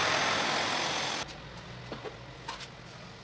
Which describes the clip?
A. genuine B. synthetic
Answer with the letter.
A